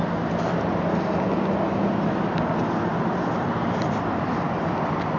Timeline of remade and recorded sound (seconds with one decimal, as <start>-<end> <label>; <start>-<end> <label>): 0.0-5.2 recorded

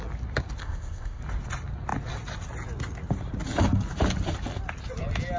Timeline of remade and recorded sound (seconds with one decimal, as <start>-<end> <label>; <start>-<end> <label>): 0.0-0.6 recorded; 0.6-1.2 remade; 1.2-5.4 recorded

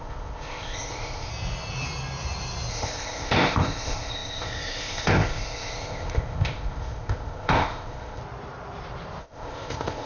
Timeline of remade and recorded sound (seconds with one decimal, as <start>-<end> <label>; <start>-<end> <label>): 0.0-1.3 remade; 1.3-2.7 recorded; 2.7-8.2 remade; 8.2-9.2 recorded; 9.2-10.1 remade

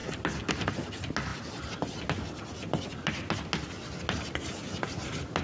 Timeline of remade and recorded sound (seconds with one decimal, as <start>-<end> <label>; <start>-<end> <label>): 0.0-5.4 recorded

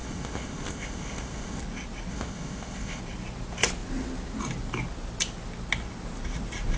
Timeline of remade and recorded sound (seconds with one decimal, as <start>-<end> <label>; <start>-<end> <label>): 0.0-1.6 remade; 1.6-2.1 recorded; 2.1-3.0 remade; 3.0-6.8 recorded